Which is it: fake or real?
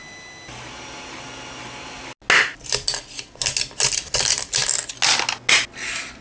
real